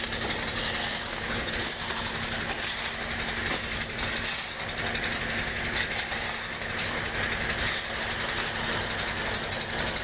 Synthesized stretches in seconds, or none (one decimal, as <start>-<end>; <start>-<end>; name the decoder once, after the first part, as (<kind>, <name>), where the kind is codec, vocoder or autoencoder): 0.8-1.5 (codec, DAC)